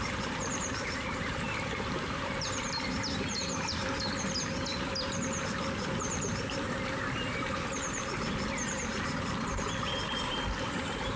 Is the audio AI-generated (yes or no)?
yes